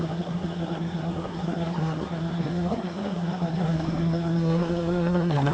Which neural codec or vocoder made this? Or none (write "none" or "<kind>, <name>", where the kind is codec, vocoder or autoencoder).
codec, SNAC